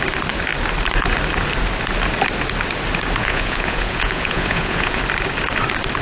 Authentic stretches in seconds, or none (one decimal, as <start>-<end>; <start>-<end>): 0.0-3.2; 5.0-6.0